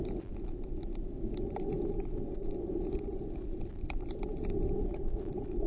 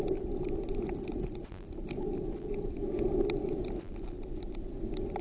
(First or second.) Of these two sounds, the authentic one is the second